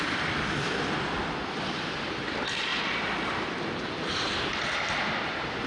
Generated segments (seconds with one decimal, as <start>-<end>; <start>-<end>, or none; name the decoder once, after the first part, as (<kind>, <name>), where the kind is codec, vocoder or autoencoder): 0.0-2.7 (vocoder, BigVGAN v2); 3.4-5.7